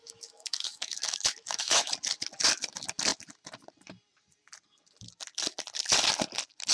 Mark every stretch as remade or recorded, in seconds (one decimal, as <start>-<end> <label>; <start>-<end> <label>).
0.0-1.9 remade; 1.9-6.7 recorded